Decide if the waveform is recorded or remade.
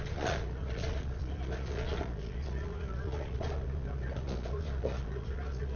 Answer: remade